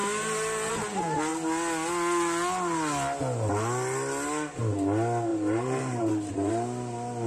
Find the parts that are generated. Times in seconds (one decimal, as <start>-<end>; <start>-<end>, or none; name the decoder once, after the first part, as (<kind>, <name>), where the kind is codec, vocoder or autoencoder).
5.3-6.5 (vocoder, BigVGAN v2)